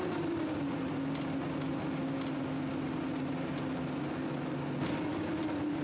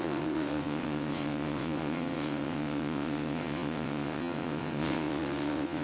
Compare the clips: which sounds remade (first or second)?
second